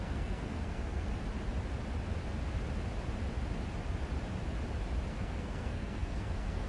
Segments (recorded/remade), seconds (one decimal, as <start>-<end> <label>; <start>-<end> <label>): 0.0-1.1 remade; 1.1-5.1 recorded; 5.1-6.7 remade